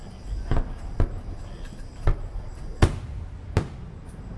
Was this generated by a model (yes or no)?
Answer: no